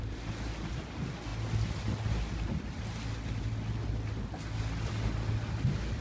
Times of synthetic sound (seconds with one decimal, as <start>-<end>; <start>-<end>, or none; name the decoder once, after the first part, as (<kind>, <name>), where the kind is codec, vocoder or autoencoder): none